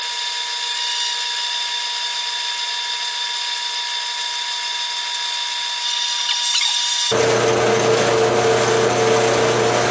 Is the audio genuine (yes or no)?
yes